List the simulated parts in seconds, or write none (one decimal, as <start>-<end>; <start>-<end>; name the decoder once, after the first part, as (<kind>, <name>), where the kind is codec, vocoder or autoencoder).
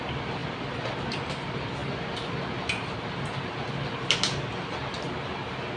none